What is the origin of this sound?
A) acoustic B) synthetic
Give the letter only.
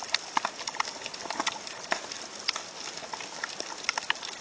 A